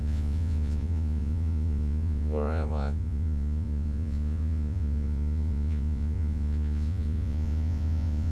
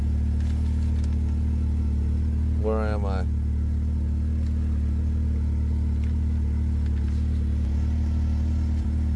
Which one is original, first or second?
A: second